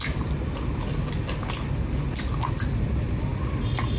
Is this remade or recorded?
recorded